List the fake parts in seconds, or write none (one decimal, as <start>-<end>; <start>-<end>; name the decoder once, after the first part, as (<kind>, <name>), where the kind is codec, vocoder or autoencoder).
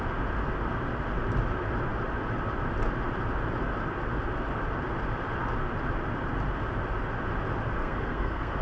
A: 7.8-8.6 (codec, SNAC)